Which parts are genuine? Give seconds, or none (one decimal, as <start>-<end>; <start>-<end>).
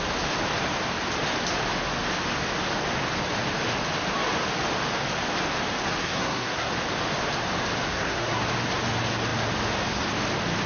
0.0-6.0; 6.7-7.9; 8.4-10.7